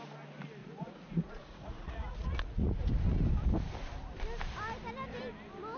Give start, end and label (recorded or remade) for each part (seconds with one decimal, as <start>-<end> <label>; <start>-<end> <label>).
0.0-0.6 recorded; 0.6-2.8 remade; 2.8-5.8 recorded